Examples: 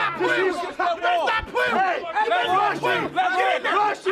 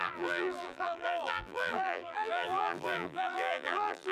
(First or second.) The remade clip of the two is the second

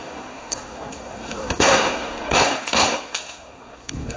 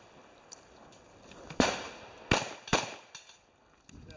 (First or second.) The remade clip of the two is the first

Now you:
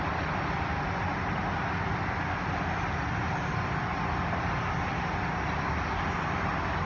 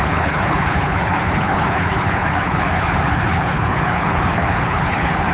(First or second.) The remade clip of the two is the second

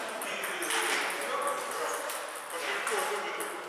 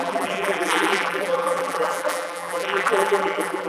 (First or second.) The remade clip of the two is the second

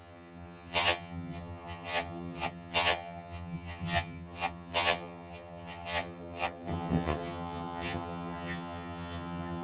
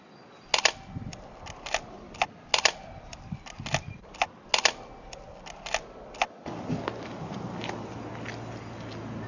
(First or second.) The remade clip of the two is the first